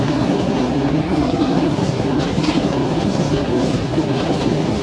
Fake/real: fake